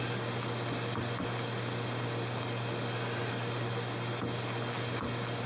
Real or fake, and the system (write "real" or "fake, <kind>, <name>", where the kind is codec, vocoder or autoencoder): real